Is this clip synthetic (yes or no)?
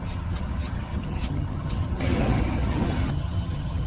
yes